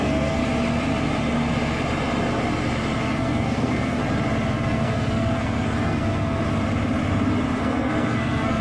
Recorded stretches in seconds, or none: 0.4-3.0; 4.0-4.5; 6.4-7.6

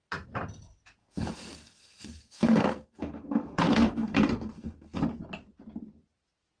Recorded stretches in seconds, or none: 0.0-1.0; 5.0-6.6